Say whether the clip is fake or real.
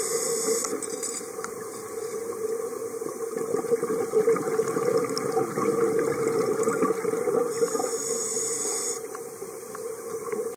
real